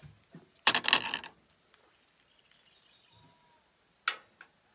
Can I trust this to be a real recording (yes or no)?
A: yes